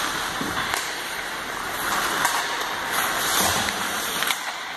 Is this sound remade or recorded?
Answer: remade